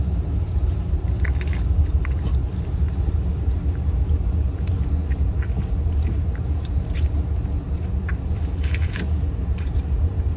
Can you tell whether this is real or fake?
fake